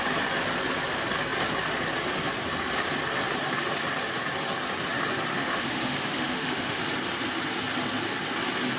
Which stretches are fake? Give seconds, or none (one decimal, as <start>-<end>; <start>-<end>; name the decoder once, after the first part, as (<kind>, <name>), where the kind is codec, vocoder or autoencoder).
5.3-6.8 (autoencoder, DAC-VAE)